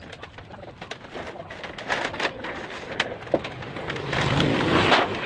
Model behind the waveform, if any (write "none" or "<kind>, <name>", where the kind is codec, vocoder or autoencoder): none